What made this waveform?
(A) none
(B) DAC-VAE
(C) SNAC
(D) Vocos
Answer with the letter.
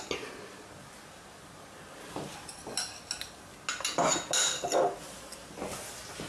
A